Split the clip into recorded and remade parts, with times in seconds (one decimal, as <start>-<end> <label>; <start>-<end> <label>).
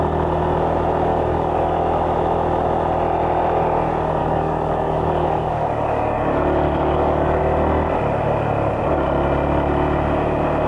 0.0-1.1 recorded; 1.1-1.8 remade; 1.8-4.2 recorded; 4.2-7.4 remade; 7.4-10.7 recorded